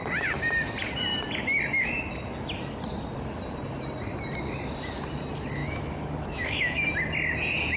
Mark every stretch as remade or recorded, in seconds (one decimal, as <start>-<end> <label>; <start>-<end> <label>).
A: 0.0-5.6 recorded; 5.6-6.9 remade; 6.9-7.8 recorded